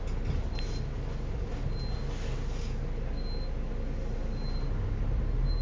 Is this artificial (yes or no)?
no